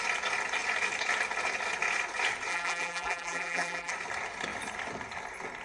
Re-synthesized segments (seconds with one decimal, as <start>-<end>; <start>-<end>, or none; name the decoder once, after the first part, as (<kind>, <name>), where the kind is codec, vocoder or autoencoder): 2.5-3.9 (vocoder, BigVGAN v2)